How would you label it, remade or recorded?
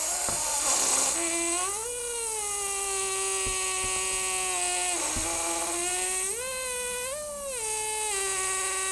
recorded